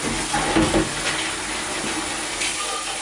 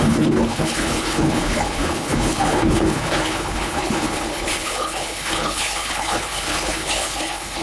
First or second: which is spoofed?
second